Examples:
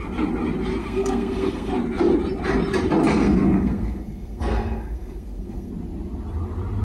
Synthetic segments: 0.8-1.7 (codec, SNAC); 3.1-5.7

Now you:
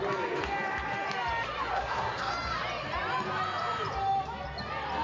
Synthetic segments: 1.7-2.3 (codec, SNAC)

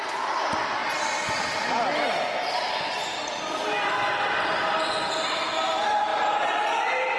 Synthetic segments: none